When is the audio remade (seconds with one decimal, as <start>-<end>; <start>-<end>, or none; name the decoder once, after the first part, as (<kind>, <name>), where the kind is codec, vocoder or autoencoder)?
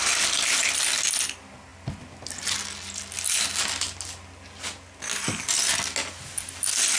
none